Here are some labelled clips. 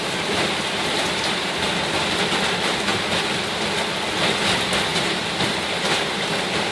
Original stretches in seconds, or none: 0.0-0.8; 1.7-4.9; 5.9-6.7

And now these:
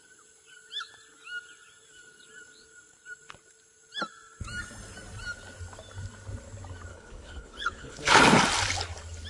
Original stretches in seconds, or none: 0.0-6.9; 8.2-9.3